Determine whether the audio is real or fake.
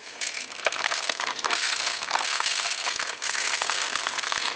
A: fake